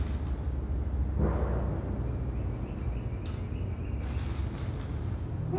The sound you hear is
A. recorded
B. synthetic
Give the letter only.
A